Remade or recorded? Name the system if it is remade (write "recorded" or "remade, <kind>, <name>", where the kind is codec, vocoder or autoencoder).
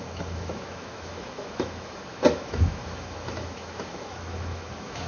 remade, autoencoder, DAC-VAE